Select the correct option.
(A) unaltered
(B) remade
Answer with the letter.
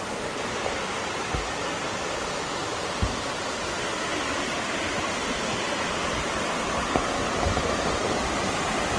A